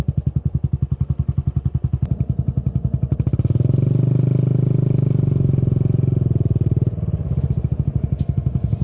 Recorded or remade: recorded